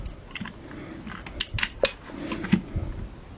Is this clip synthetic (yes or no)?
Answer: no